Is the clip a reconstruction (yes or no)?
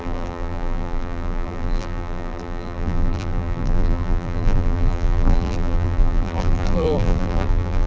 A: yes